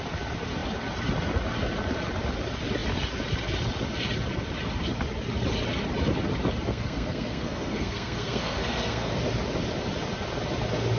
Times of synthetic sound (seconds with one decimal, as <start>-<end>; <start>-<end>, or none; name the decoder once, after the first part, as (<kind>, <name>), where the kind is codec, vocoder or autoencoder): 6.7-9.2 (codec, SNAC)